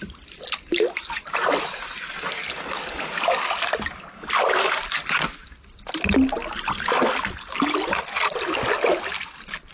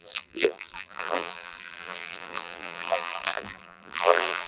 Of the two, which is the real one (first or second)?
first